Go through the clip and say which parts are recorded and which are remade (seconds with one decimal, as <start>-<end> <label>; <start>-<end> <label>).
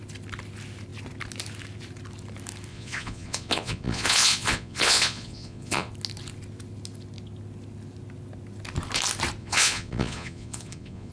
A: 0.0-2.7 recorded; 2.7-5.9 remade; 5.9-9.4 recorded; 9.4-11.1 remade